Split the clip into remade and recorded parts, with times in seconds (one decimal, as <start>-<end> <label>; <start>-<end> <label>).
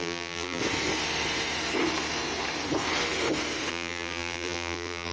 0.0-0.6 remade; 0.6-3.7 recorded; 3.7-5.1 remade